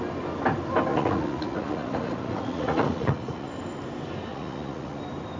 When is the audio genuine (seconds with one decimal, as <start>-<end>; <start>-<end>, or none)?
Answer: 0.0-0.9; 3.5-4.3; 5.0-5.4

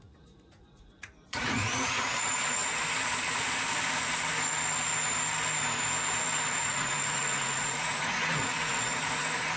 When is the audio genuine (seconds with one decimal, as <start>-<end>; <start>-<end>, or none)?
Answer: 2.6-6.5